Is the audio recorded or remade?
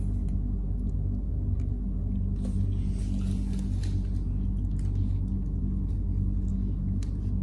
recorded